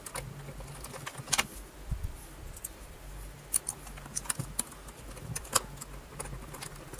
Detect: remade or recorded recorded